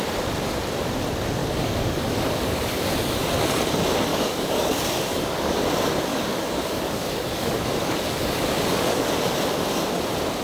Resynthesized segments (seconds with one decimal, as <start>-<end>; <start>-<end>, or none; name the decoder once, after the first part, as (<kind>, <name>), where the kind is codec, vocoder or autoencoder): 1.4-2.9 (codec, DAC); 4.1-5.6; 6.1-9.1